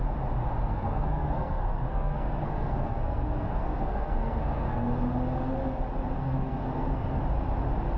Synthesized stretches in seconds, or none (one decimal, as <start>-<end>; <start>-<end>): 0.6-4.9; 6.2-7.2